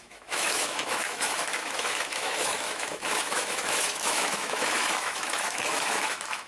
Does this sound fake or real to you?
fake